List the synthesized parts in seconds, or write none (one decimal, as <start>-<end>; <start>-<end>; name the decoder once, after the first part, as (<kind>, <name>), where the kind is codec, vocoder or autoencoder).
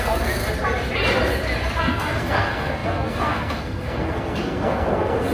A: 0.0-0.4 (codec, SNAC); 1.8-5.3